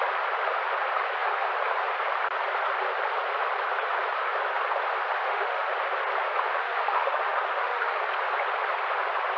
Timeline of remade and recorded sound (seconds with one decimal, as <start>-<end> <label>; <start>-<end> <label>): 0.0-5.2 recorded; 5.2-5.7 remade; 5.7-6.5 recorded; 6.5-8.0 remade; 8.0-9.4 recorded